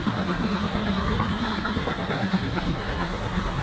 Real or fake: fake